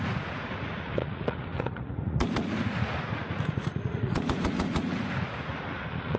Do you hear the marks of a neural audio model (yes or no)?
yes